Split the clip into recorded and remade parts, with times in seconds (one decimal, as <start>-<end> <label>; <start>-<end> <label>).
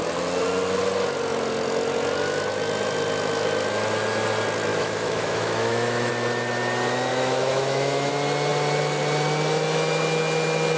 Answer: 0.0-4.7 recorded; 4.7-6.1 remade; 6.1-7.1 recorded; 7.1-8.1 remade; 8.1-10.8 recorded